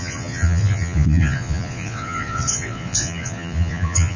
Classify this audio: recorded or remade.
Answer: remade